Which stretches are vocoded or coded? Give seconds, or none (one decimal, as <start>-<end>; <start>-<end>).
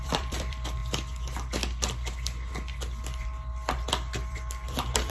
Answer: 0.0-0.8; 3.9-5.1